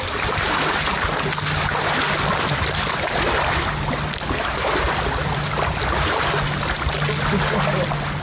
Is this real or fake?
real